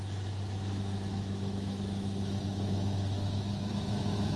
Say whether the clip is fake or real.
fake